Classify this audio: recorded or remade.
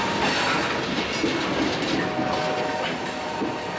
recorded